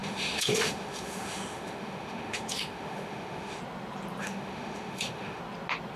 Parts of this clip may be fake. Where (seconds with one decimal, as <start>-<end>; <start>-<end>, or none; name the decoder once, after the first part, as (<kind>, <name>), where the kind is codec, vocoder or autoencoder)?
0.0-3.6 (autoencoder, DAC-VAE); 4.2-5.4